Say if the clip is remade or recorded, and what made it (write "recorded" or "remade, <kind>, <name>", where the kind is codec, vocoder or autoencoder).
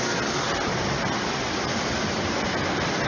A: recorded